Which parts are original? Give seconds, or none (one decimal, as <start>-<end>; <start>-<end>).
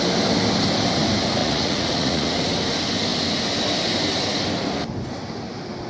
0.0-1.4; 2.3-5.9